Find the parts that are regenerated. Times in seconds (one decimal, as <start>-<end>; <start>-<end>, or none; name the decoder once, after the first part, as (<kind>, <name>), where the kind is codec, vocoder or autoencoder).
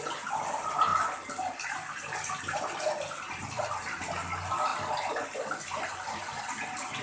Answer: none